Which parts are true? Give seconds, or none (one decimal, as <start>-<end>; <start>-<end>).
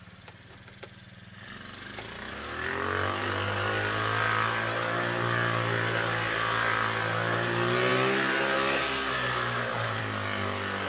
0.0-10.9